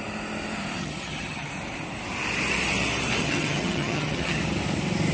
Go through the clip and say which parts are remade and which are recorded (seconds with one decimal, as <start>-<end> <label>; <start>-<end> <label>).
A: 0.0-0.8 recorded; 0.8-1.5 remade; 1.5-3.2 recorded; 3.2-4.4 remade; 4.4-5.1 recorded